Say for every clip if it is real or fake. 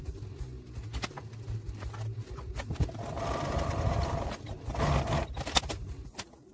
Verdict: real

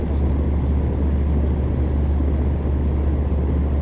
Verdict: real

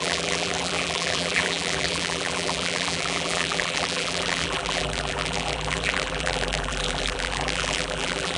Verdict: fake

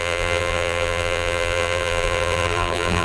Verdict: fake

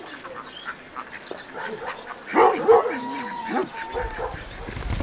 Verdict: real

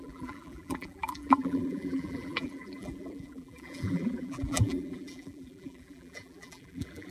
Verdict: fake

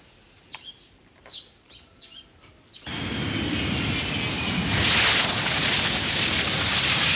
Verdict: real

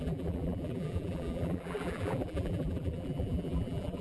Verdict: fake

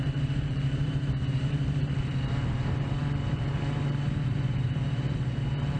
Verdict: fake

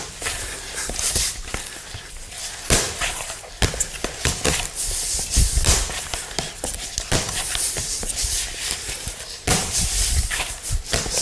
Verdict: fake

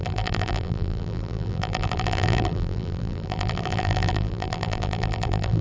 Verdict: fake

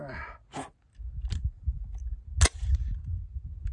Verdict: real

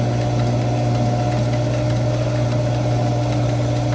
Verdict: real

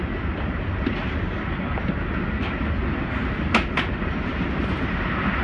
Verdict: real